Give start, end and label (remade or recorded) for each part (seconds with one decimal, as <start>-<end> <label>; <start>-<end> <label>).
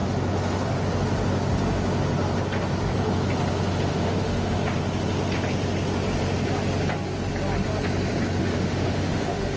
0.0-3.9 recorded; 3.9-4.5 remade; 4.5-8.4 recorded; 8.4-9.6 remade